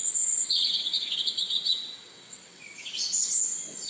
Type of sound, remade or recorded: remade